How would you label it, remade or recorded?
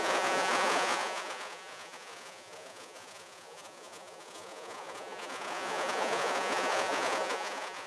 remade